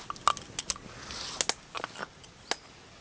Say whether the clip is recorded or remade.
recorded